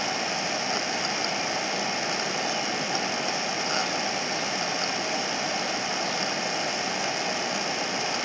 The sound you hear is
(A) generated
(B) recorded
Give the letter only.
B